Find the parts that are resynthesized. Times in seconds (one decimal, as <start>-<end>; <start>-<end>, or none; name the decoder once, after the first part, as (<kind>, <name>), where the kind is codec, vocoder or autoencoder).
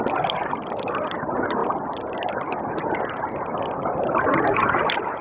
none